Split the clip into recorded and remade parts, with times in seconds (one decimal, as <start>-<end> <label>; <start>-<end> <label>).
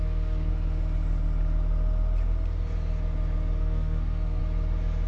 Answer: 0.0-0.5 remade; 0.5-3.6 recorded; 3.6-4.4 remade; 4.4-5.1 recorded